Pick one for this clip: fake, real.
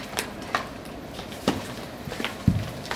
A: fake